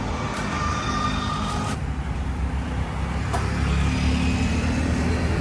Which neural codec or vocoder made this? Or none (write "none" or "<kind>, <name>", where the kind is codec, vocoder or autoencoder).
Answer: none